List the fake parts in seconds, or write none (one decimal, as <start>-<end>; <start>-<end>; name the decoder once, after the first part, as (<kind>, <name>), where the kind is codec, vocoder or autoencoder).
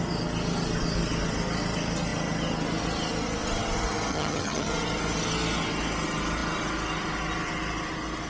4.1-4.7 (vocoder, HiFi-GAN)